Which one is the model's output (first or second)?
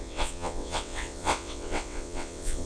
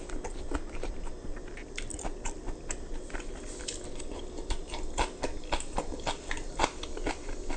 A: first